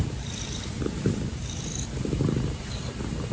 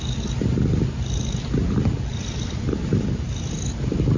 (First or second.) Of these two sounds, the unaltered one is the second